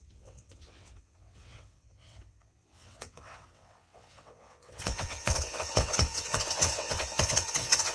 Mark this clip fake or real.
fake